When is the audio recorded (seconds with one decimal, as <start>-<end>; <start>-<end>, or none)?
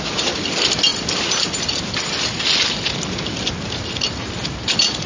0.0-5.1